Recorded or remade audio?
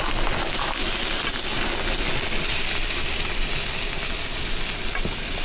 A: recorded